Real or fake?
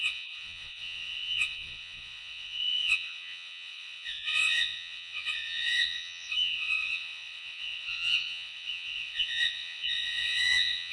fake